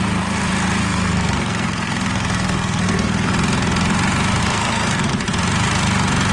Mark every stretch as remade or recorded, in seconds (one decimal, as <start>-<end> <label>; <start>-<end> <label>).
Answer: 0.0-0.8 recorded; 0.8-3.3 remade; 3.3-4.4 recorded; 4.4-5.1 remade; 5.1-6.3 recorded